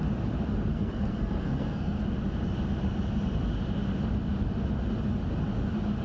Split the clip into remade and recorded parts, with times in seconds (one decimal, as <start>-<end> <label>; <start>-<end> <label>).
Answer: 0.0-0.7 recorded; 0.7-2.0 remade; 2.0-6.0 recorded